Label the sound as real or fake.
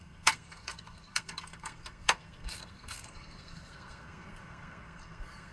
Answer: fake